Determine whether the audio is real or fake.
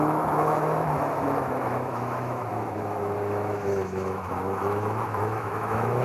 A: fake